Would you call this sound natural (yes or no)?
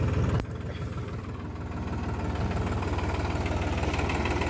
yes